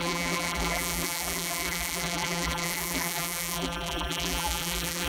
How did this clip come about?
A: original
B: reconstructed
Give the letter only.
B